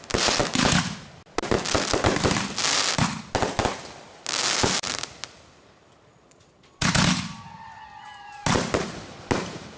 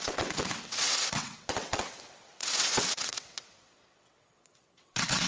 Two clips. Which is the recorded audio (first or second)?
first